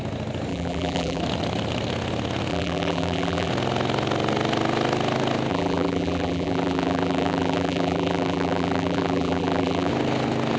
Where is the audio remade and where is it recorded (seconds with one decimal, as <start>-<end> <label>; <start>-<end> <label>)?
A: 0.0-0.5 recorded; 0.5-1.2 remade; 1.2-2.5 recorded; 2.5-3.5 remade; 3.5-5.5 recorded; 5.5-9.9 remade; 9.9-10.6 recorded